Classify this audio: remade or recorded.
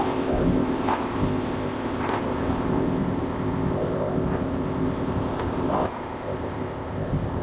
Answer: remade